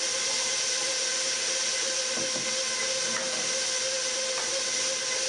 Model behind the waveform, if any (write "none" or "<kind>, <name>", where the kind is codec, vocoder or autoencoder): none